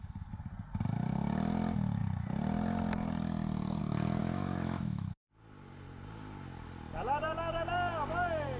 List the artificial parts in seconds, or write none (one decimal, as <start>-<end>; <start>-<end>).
4.2-5.2